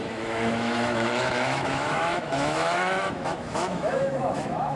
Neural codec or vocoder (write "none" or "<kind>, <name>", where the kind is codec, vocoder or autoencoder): autoencoder, DAC-VAE